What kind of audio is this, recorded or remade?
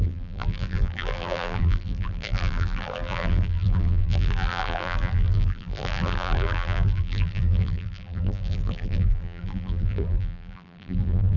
remade